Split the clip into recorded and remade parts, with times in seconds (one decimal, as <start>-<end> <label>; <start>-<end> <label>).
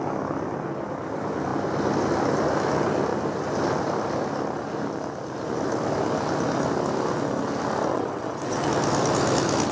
0.0-7.9 recorded; 7.9-8.7 remade; 8.7-9.7 recorded